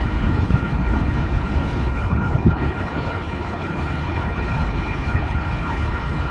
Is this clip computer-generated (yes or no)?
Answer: yes